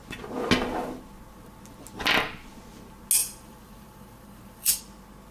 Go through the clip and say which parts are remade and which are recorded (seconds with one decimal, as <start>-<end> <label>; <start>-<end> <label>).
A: 0.0-3.2 recorded; 3.2-4.8 remade; 4.8-5.3 recorded